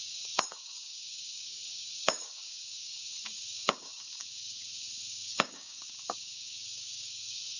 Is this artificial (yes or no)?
yes